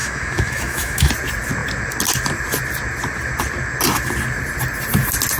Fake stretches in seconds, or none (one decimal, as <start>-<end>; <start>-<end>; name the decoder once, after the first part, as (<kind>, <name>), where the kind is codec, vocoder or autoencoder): 0.0-1.1 (autoencoder, DAC-VAE)